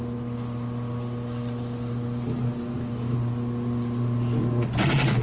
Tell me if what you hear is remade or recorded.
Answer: recorded